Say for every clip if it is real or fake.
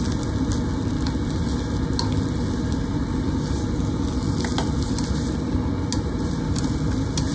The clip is real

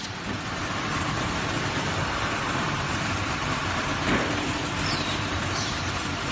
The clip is fake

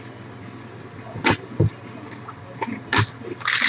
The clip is real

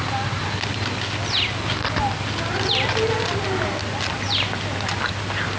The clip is real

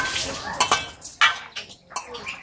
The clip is real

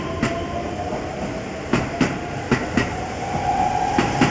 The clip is real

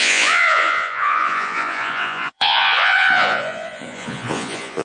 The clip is fake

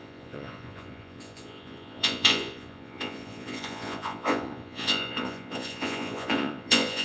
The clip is fake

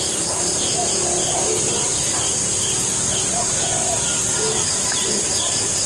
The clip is real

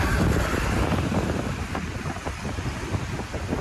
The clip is fake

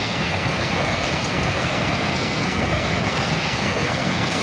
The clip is fake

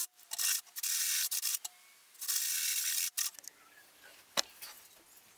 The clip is real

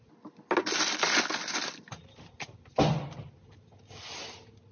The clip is real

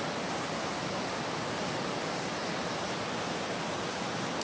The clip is real